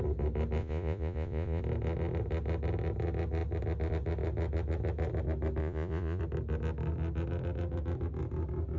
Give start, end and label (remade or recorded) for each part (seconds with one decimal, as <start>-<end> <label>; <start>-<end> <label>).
0.0-0.6 recorded; 0.6-1.6 remade; 1.6-5.6 recorded; 5.6-6.2 remade; 6.2-8.8 recorded